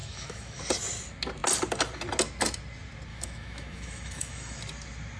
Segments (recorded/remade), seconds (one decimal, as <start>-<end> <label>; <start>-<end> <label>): 0.0-0.6 remade; 0.6-3.1 recorded; 3.1-4.6 remade; 4.6-5.2 recorded